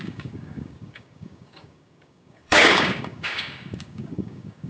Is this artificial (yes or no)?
yes